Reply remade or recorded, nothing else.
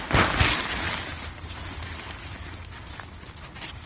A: recorded